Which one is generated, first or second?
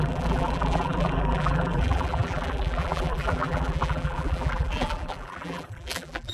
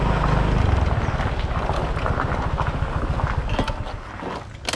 first